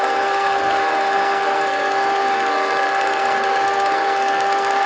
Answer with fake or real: fake